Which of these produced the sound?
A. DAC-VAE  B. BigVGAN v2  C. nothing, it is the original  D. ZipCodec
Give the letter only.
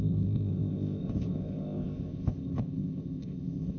D